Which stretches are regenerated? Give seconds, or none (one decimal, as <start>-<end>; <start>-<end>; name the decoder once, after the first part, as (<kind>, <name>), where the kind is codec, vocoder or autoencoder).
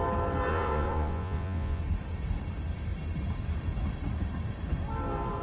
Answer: 0.5-1.8 (vocoder, Vocos)